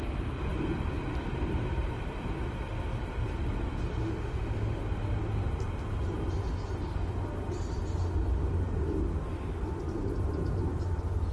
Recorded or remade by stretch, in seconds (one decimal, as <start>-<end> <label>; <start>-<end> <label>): 0.0-4.0 recorded; 4.0-4.8 remade; 4.8-11.3 recorded